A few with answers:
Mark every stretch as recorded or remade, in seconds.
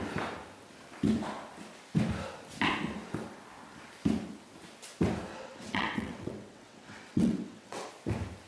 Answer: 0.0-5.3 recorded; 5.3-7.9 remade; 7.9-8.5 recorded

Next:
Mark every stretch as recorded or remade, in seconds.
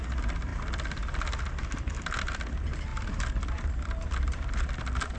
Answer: 0.0-5.2 recorded